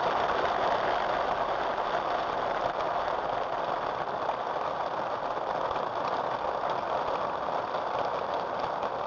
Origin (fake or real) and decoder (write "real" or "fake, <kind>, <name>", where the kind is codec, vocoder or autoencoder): real